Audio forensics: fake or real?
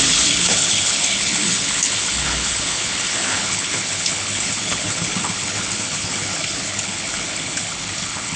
fake